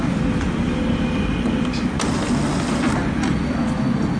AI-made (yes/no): no